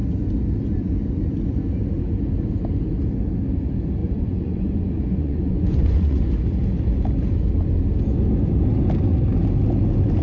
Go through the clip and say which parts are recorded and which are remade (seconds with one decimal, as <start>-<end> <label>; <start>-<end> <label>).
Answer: 0.0-4.0 recorded; 4.0-6.3 remade; 6.3-10.2 recorded